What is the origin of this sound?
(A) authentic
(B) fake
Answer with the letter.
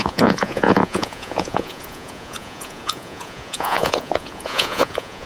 B